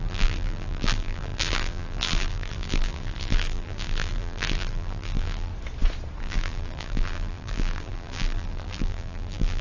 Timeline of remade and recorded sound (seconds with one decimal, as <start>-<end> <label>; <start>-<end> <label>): 0.0-5.5 remade; 5.5-6.2 recorded; 6.2-9.6 remade